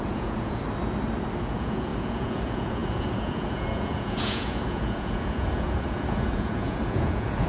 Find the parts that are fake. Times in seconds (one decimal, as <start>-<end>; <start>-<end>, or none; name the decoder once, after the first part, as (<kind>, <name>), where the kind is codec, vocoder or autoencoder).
0.0-0.6 (vocoder, Vocos); 1.4-7.5